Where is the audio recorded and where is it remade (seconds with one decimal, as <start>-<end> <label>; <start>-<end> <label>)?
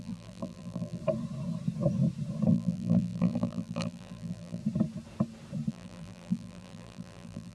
0.0-1.0 remade; 1.0-2.5 recorded; 2.5-4.6 remade; 4.6-5.7 recorded; 5.7-7.5 remade